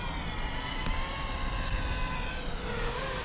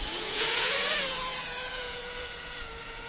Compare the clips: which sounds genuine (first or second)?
first